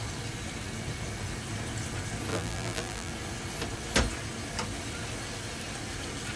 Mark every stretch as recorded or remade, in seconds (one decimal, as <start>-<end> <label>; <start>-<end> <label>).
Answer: 0.0-2.3 recorded; 2.3-3.1 remade; 3.1-6.4 recorded